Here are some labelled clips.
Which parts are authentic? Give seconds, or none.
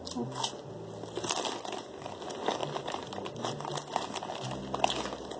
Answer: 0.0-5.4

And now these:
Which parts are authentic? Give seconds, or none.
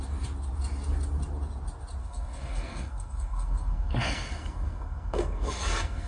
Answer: 0.0-2.0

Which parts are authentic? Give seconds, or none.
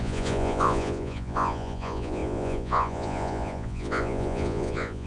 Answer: none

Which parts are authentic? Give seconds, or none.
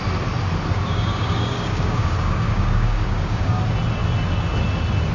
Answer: 0.0-0.7; 3.6-5.1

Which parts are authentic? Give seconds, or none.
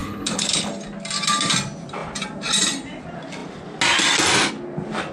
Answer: 0.7-5.1